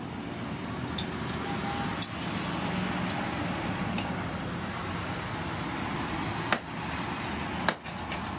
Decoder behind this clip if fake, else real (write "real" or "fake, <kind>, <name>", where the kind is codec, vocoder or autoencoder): real